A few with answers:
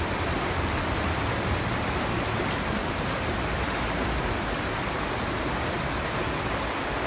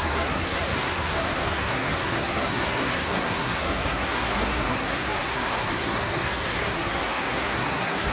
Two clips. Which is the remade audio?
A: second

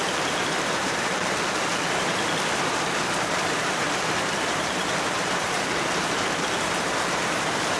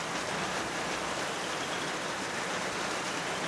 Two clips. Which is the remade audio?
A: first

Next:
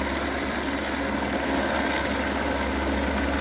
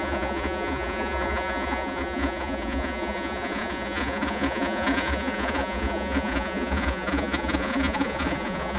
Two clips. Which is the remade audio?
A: second